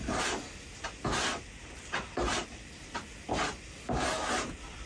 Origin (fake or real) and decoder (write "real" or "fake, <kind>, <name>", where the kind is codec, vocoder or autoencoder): real